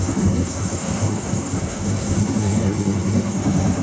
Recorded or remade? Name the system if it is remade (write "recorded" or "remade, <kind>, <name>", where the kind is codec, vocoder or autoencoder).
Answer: remade, codec, SNAC